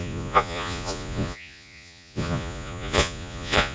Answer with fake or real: fake